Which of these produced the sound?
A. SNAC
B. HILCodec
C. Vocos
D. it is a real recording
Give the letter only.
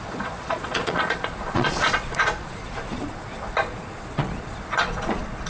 C